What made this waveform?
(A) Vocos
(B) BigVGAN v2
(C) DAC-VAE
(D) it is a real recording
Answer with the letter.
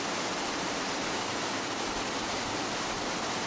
D